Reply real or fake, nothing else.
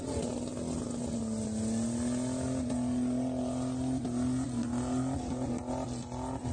real